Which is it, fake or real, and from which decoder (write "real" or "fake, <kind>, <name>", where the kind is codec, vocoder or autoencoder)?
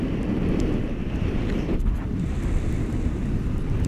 real